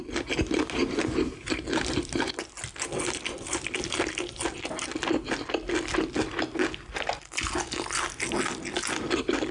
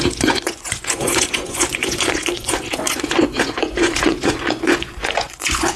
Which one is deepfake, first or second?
second